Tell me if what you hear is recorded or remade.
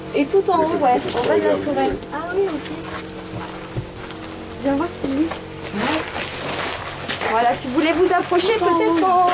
recorded